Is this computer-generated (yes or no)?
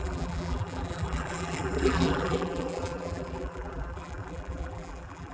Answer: yes